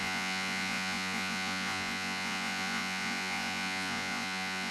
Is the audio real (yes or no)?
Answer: no